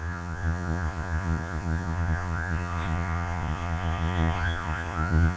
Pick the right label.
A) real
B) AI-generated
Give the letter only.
B